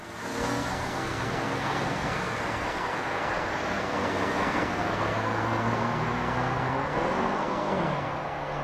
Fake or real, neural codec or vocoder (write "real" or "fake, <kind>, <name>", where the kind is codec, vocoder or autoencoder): fake, codec, SNAC